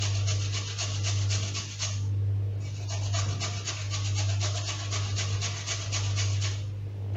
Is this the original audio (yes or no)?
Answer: yes